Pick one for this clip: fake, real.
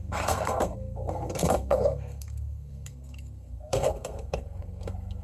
fake